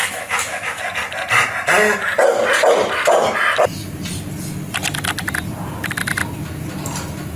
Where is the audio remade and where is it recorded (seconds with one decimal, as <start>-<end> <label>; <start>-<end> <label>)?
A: 0.0-0.8 remade; 0.8-7.4 recorded